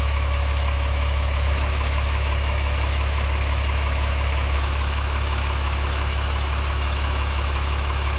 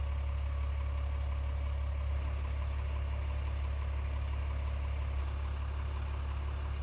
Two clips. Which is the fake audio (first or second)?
first